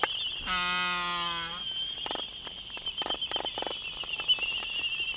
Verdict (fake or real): real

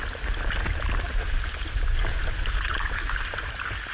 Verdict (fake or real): real